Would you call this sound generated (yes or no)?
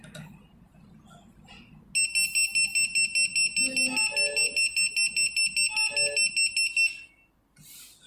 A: no